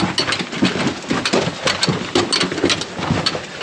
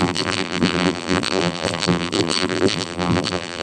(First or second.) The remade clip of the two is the second